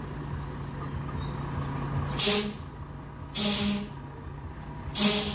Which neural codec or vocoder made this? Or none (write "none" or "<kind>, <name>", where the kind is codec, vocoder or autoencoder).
none